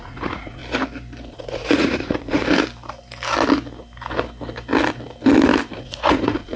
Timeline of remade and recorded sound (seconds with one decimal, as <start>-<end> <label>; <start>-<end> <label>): 0.0-0.6 remade; 0.6-1.3 recorded; 1.3-2.4 remade; 2.4-5.7 recorded; 5.7-6.6 remade